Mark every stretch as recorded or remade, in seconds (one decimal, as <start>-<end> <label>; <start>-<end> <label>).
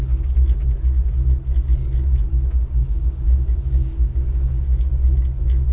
0.0-2.8 recorded; 2.8-4.6 remade; 4.6-5.7 recorded